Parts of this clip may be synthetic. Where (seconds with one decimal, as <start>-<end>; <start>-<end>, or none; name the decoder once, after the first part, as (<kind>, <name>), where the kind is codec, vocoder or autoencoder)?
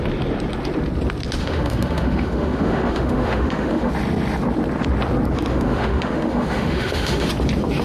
1.4-3.9 (autoencoder, DAC-VAE); 5.5-7.3